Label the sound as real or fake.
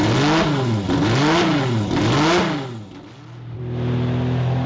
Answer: real